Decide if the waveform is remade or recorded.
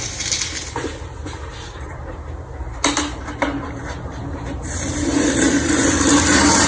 remade